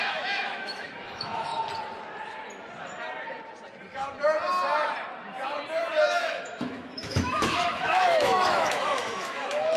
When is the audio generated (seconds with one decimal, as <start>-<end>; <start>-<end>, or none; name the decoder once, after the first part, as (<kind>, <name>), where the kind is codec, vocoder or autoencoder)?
0.0-1.5 (autoencoder, DAC-VAE); 6.0-9.8